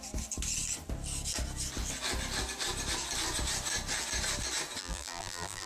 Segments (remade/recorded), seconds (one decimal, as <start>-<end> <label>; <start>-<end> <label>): 0.0-4.8 recorded; 4.8-5.7 remade